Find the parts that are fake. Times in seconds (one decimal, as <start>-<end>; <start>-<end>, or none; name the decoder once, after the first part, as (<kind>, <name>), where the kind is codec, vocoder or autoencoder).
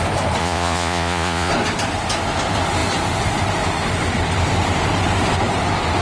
0.4-1.5 (vocoder, Vocos)